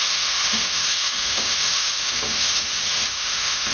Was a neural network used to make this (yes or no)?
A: yes